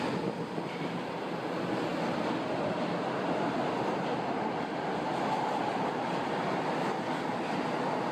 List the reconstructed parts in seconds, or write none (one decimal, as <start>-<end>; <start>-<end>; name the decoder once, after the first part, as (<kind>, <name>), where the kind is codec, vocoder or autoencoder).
none